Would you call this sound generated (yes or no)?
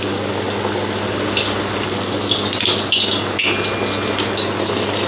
no